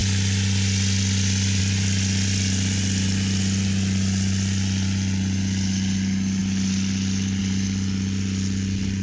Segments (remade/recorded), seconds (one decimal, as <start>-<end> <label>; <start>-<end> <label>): 0.0-9.0 recorded